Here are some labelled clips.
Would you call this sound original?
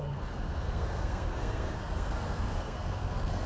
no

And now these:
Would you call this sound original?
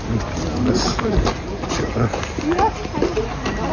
yes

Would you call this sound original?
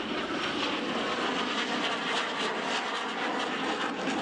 yes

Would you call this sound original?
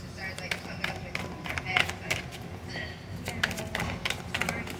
yes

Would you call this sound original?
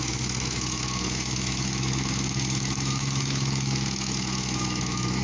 no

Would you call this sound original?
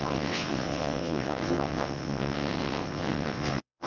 no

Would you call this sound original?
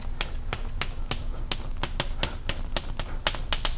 yes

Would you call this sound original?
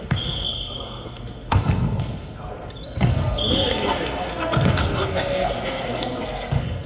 no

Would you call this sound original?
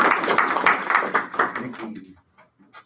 yes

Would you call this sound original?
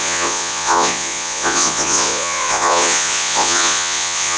no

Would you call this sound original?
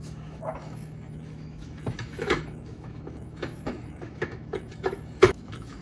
no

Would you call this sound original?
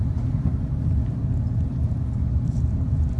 no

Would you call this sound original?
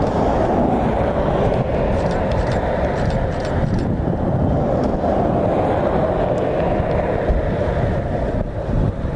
yes